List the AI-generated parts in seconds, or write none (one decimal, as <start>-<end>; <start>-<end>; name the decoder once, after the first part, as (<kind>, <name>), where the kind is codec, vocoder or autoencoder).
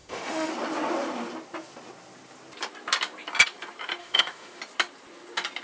0.0-0.5 (autoencoder, DAC-VAE); 4.0-4.6